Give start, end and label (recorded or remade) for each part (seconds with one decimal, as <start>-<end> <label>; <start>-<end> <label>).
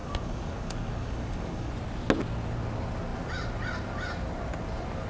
0.0-1.7 remade; 1.7-5.1 recorded